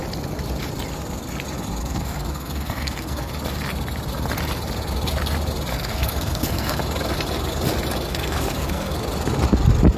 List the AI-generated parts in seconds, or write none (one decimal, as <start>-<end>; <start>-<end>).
1.8-3.3; 5.7-6.8; 8.1-9.0